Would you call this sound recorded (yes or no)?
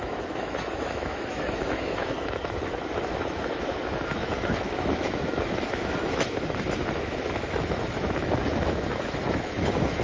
no